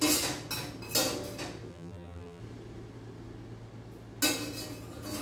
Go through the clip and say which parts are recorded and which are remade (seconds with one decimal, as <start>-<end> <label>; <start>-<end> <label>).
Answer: 0.0-1.7 recorded; 1.7-2.4 remade; 2.4-5.2 recorded